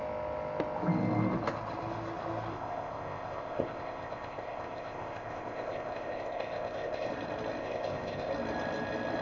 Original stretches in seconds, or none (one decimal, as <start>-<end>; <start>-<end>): 0.0-2.5; 7.1-7.6; 8.3-9.2